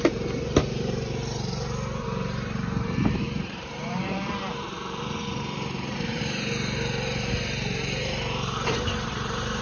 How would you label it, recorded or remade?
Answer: remade